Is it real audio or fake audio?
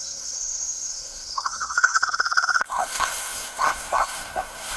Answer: fake